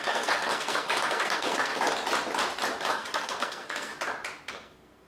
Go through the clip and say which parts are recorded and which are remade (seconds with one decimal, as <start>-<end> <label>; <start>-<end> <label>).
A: 0.0-1.7 remade; 1.7-2.9 recorded; 2.9-3.9 remade; 3.9-4.5 recorded; 4.5-5.1 remade